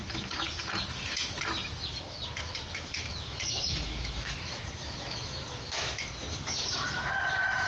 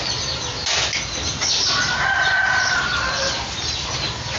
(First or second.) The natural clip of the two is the second